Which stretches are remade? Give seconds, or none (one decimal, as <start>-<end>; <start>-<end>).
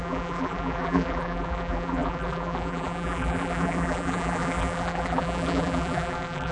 0.0-6.5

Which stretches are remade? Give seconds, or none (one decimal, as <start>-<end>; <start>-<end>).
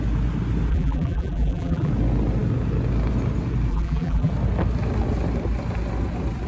0.7-1.9; 3.7-4.3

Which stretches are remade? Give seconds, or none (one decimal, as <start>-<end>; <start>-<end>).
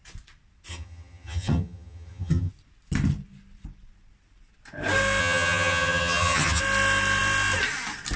0.7-2.5; 5.2-6.6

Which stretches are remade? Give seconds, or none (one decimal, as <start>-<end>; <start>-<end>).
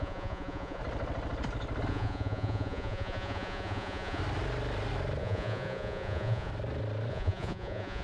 0.0-0.8; 1.9-4.2; 5.2-6.5; 7.1-8.0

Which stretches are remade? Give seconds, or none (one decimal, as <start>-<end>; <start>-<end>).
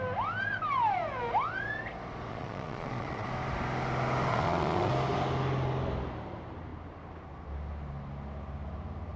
2.3-3.3; 4.3-4.9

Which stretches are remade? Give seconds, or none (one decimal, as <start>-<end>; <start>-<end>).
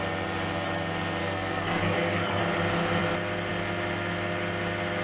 1.2-2.4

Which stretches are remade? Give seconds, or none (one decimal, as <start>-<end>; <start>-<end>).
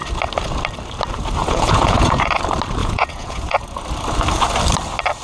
1.4-2.3; 2.8-3.6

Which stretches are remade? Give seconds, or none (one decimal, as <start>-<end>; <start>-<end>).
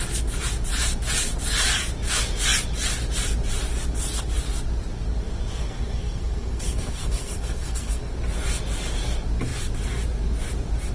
5.6-8.1